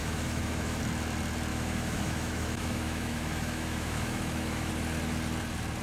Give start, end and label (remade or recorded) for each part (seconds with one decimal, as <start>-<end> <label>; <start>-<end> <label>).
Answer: 0.0-0.8 remade; 0.8-1.5 recorded; 1.5-4.7 remade; 4.7-5.8 recorded